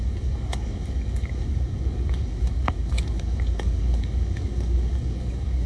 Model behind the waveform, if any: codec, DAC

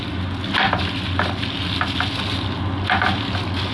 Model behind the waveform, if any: none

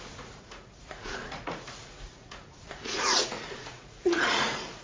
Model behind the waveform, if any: vocoder, Vocos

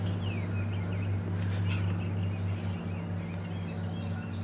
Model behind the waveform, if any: none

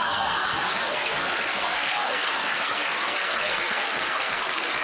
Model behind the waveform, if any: codec, SNAC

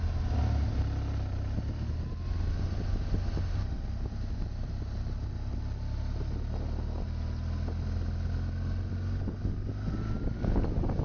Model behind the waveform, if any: none